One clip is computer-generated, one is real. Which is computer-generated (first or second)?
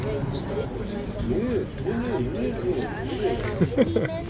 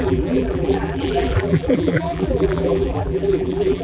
second